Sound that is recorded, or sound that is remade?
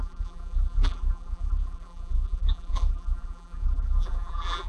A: remade